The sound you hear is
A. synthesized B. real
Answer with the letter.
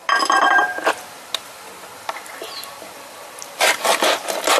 B